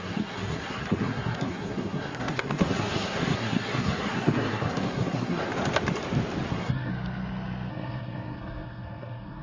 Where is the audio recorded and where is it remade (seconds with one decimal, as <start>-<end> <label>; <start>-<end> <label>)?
0.0-5.4 remade; 5.4-6.5 recorded; 6.5-6.9 remade; 6.9-7.7 recorded; 7.7-9.4 remade